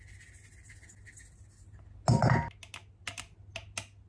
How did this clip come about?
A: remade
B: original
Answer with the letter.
B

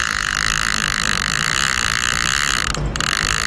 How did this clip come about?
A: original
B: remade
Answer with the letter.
A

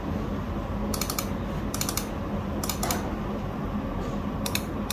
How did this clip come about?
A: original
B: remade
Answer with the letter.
A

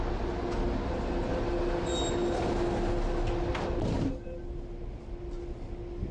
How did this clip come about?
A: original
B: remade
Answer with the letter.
A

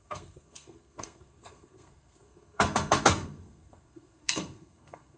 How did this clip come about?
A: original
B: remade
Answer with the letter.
B